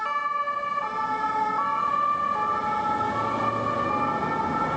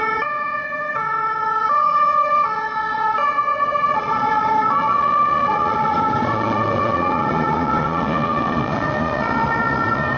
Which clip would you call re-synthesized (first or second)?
second